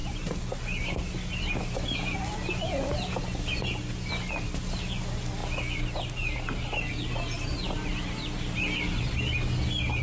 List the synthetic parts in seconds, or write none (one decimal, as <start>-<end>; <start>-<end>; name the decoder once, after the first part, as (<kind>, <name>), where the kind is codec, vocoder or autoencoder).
none